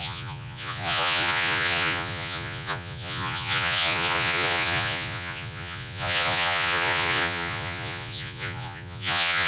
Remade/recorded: remade